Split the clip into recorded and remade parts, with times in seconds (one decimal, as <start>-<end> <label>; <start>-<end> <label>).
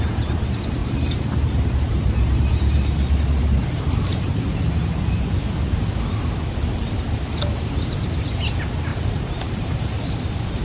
0.0-0.8 recorded; 0.8-2.5 remade; 2.5-4.1 recorded; 4.1-5.5 remade; 5.5-8.9 recorded; 8.9-10.0 remade; 10.0-10.6 recorded